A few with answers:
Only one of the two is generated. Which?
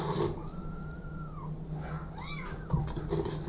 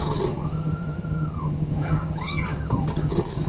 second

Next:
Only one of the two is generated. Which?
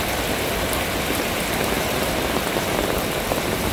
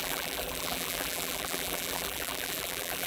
second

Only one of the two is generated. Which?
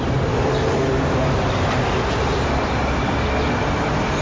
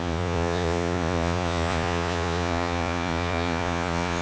second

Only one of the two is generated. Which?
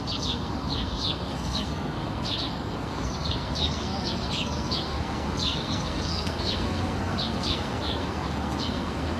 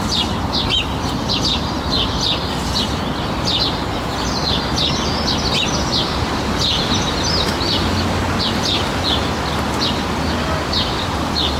first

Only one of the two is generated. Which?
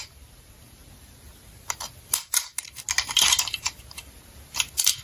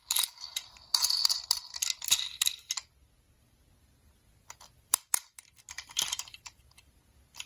first